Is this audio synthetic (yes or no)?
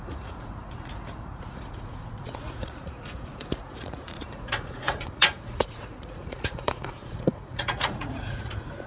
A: yes